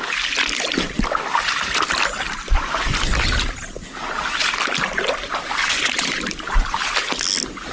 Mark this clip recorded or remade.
recorded